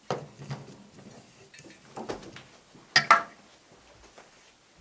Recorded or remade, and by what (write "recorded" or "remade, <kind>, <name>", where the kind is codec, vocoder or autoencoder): recorded